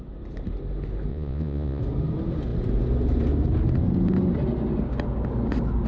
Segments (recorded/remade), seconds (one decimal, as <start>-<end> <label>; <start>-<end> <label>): 0.0-1.1 recorded; 1.1-1.8 remade; 1.8-5.9 recorded